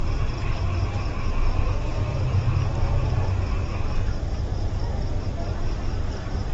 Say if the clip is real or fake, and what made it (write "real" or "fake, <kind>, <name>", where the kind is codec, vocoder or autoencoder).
real